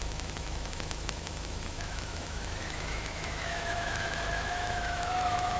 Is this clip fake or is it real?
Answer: fake